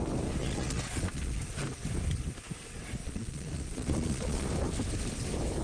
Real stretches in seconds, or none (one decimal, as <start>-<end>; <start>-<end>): 0.0-0.4; 1.4-3.0; 4.5-5.6